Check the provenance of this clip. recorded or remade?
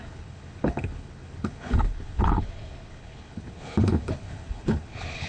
remade